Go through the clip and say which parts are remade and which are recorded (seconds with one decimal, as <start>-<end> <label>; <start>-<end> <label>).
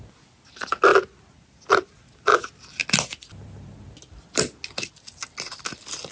0.0-6.1 recorded